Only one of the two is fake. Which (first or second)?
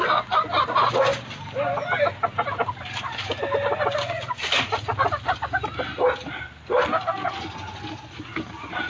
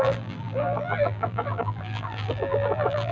second